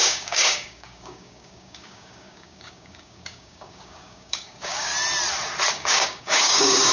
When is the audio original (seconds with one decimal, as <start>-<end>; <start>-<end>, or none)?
4.9-5.7